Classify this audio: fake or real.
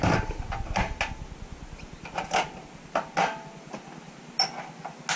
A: real